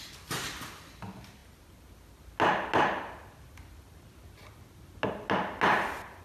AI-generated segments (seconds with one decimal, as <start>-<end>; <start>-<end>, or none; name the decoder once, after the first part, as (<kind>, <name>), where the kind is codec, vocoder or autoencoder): none